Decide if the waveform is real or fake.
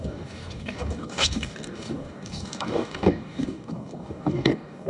fake